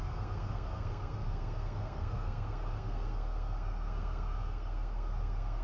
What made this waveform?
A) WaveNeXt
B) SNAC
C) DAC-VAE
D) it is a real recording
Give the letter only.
B